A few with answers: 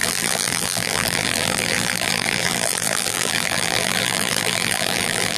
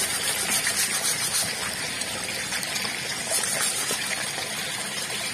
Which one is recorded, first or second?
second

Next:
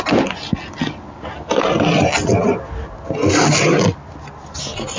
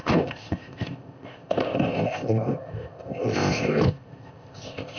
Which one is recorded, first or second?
first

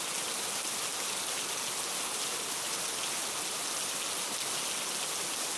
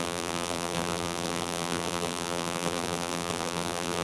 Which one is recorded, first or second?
first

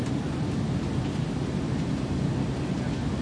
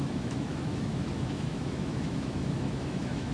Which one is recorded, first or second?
first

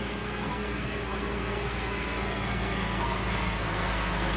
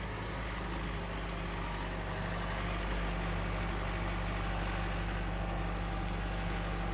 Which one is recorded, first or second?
second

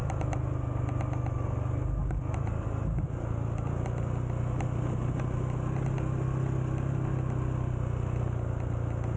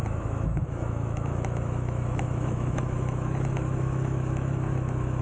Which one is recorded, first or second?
first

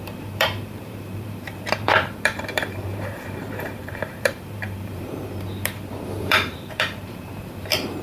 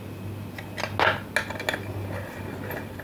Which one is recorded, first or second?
second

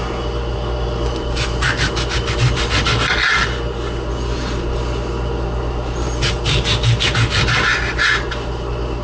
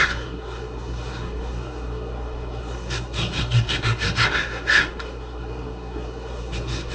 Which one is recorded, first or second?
first